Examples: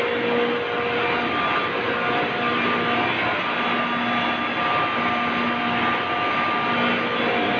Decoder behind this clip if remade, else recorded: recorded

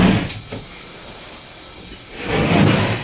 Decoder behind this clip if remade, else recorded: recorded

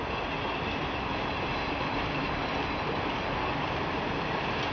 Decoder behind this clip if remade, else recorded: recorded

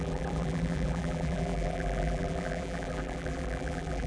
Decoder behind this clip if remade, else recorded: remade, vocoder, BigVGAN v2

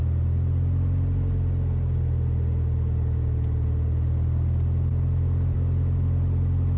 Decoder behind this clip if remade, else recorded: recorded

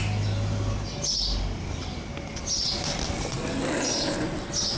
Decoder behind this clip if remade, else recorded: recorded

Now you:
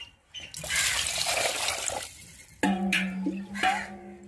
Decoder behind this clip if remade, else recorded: recorded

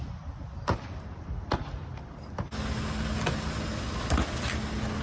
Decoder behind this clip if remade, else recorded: recorded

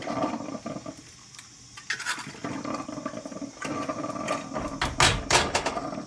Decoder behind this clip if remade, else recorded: recorded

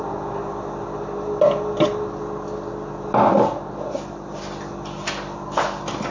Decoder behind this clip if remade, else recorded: recorded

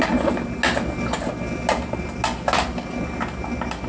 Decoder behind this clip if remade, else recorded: recorded